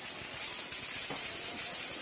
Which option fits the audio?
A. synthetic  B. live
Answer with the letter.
B